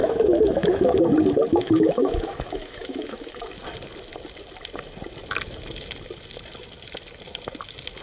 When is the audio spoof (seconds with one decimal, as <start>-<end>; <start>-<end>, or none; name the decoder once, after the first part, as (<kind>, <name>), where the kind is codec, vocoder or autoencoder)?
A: 0.0-1.0 (autoencoder, DAC-VAE); 1.5-3.6